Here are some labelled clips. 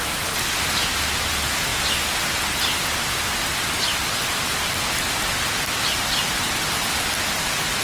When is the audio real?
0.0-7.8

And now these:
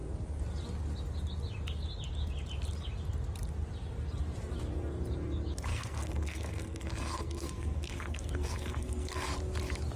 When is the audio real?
0.0-5.7; 9.3-10.0

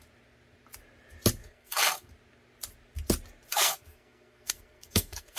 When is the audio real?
0.0-1.4; 2.1-3.5

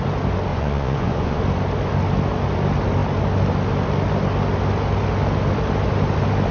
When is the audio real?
0.0-0.5; 1.4-6.5

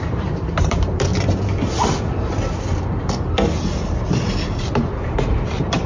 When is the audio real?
1.1-4.6

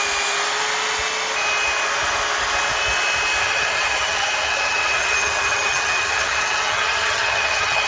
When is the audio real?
0.0-3.4